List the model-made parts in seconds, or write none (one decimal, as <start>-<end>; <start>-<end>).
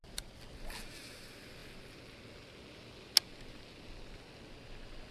none